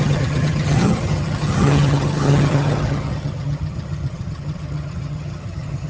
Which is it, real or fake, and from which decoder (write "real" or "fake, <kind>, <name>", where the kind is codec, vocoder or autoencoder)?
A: fake, vocoder, HiFi-GAN